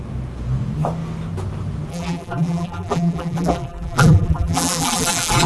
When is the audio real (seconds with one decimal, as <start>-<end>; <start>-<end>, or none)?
0.0-1.9